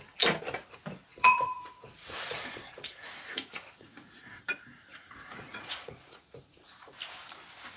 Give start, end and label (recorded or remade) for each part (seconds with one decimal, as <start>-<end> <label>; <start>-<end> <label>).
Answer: 0.0-1.1 recorded; 1.1-4.4 remade; 4.4-4.9 recorded; 4.9-6.9 remade; 6.9-7.8 recorded